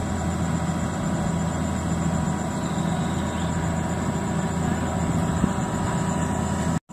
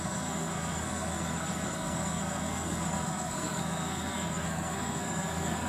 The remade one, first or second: second